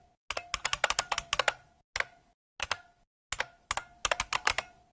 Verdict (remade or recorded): recorded